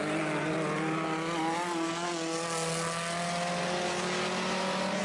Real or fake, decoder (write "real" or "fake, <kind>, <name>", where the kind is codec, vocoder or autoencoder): real